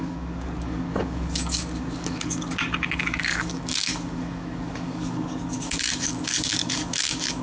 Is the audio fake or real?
fake